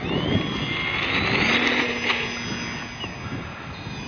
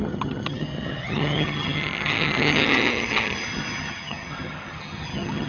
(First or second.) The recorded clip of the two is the first